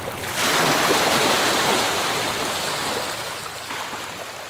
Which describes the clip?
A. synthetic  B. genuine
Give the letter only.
B